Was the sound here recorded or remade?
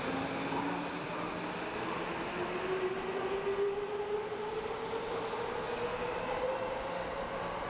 recorded